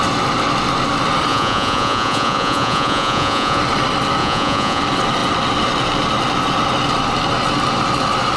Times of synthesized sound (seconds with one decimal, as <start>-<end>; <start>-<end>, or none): 1.3-3.6; 4.2-4.8